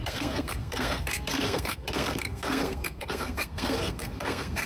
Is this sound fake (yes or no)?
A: yes